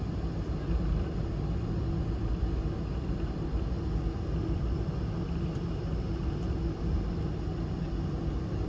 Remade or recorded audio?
recorded